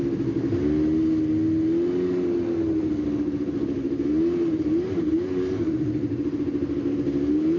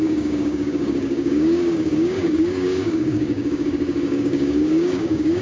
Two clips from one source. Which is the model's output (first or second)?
second